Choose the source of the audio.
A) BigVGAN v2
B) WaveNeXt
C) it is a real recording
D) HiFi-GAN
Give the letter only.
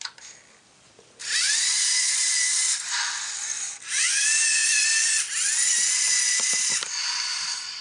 A